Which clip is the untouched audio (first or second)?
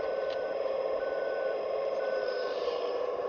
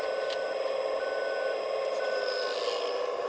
second